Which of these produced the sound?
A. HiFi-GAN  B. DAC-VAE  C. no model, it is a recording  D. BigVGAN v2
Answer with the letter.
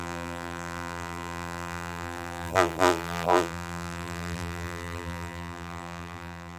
D